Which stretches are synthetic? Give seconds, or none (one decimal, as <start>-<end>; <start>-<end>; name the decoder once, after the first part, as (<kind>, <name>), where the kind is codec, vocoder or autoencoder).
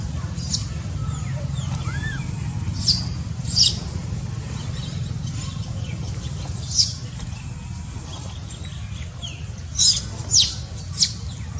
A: none